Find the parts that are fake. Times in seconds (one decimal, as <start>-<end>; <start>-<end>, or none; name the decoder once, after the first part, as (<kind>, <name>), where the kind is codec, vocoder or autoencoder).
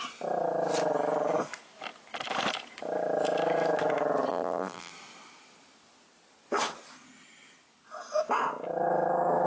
4.3-4.9 (vocoder, BigVGAN v2)